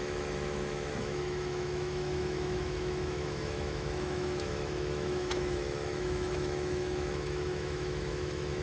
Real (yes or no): no